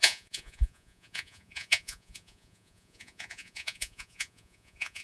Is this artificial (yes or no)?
yes